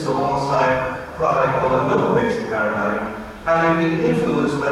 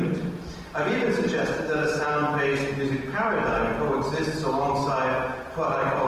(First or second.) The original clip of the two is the second